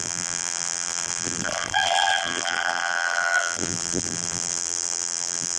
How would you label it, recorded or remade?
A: remade